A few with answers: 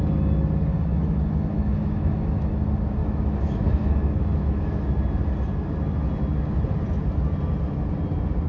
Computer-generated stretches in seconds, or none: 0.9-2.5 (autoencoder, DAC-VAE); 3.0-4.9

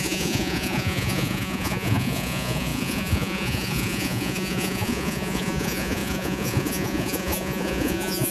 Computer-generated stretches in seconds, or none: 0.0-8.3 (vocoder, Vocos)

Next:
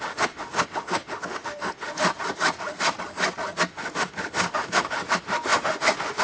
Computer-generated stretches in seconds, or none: 0.0-2.1 (autoencoder, DAC-VAE); 3.7-6.2

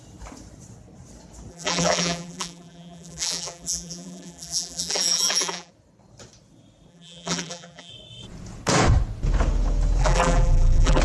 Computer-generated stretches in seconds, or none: 1.5-5.7 (vocoder, BigVGAN v2); 6.9-7.9; 10.0-11.0